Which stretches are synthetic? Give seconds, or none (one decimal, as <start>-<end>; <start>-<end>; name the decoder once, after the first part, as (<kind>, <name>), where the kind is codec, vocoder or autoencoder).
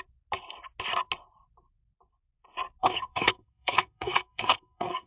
2.8-5.1 (codec, SNAC)